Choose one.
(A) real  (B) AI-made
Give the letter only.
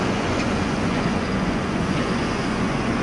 B